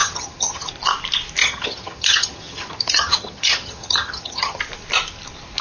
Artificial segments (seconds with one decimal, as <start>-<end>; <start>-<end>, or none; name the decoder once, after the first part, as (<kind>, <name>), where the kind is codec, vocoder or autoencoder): 0.0-0.7 (vocoder, HiFi-GAN); 1.4-4.6